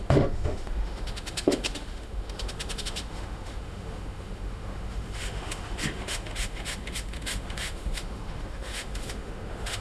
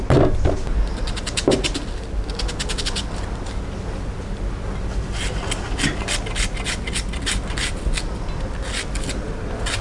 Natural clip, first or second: second